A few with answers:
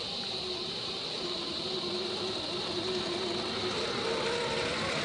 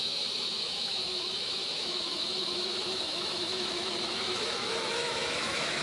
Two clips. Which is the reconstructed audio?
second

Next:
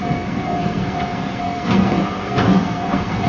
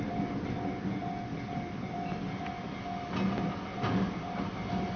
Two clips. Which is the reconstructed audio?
first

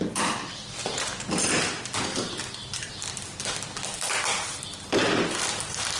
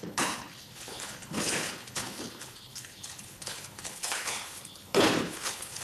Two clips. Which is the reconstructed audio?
second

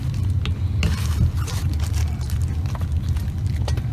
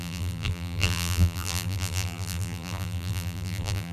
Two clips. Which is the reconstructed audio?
second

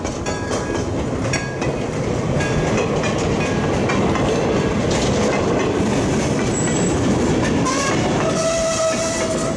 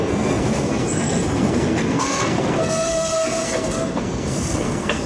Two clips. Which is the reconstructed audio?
second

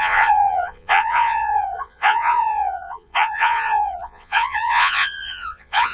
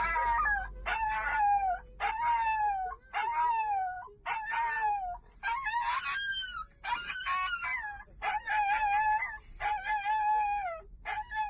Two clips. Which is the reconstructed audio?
first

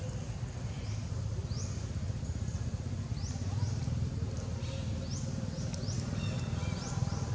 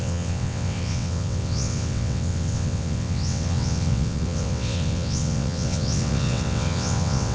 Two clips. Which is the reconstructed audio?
second